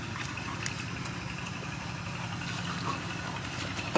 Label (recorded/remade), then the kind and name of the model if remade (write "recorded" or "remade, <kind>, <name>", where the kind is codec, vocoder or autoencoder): recorded